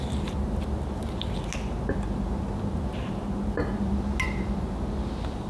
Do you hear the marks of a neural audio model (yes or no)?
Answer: no